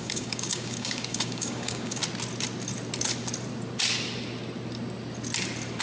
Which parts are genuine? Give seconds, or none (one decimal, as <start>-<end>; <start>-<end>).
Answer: 2.0-5.8